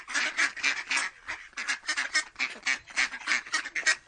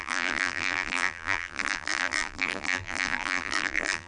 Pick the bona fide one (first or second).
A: first